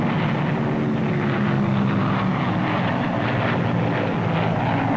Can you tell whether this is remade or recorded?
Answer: recorded